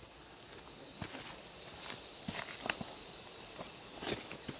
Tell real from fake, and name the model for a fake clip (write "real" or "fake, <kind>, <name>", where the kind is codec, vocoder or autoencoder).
real